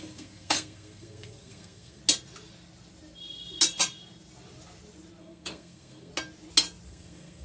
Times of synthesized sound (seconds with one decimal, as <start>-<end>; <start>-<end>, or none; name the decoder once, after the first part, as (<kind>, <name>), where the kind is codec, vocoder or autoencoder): 0.0-2.0 (codec, SNAC); 5.2-6.1; 6.9-7.4